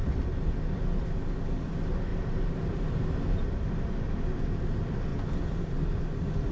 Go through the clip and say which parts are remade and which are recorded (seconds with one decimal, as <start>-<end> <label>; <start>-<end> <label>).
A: 0.0-2.1 recorded; 2.1-3.4 remade; 3.4-6.5 recorded